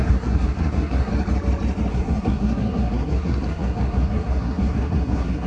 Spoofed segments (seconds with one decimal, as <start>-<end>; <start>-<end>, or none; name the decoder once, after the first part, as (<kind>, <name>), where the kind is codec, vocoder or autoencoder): 0.0-1.1 (codec, SNAC); 1.9-5.5